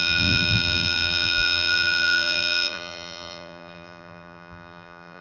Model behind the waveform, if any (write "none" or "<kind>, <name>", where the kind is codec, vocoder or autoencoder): vocoder, BigVGAN v2